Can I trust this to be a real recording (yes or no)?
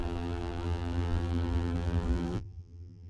no